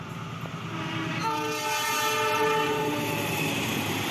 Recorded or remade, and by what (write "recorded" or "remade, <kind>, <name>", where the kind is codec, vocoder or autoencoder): recorded